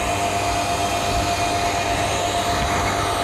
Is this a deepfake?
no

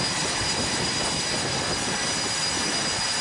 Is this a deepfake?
no